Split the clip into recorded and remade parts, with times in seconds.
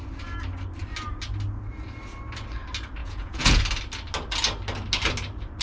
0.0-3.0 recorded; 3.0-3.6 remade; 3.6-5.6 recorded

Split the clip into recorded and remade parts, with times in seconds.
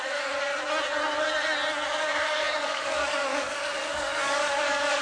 0.0-0.5 remade; 0.5-2.0 recorded; 2.0-5.0 remade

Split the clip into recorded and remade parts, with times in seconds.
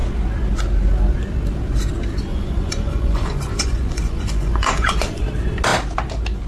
0.0-2.3 recorded; 2.3-5.2 remade; 5.2-6.5 recorded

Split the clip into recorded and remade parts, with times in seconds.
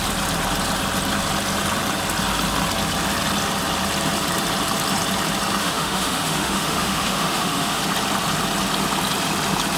0.0-5.6 recorded; 5.6-7.8 remade; 7.8-9.8 recorded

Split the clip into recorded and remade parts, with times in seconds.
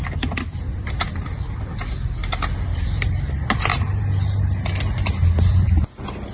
0.0-2.7 recorded; 2.7-3.3 remade; 3.3-3.7 recorded; 3.7-4.4 remade; 4.4-6.3 recorded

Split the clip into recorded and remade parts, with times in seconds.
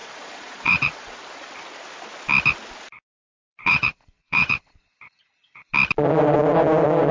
0.0-1.2 remade; 1.2-3.6 recorded; 3.6-5.7 remade; 5.7-7.1 recorded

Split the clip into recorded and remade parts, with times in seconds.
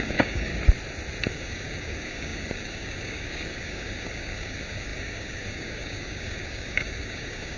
0.0-0.5 remade; 0.5-1.3 recorded; 1.3-7.6 remade